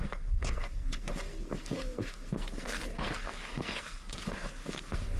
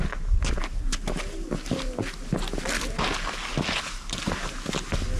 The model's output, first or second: first